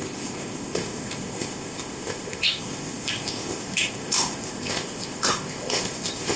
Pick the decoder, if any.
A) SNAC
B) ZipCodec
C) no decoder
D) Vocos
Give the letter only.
B